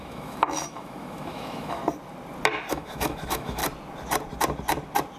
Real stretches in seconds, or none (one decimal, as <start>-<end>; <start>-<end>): 1.8-2.7; 3.6-5.2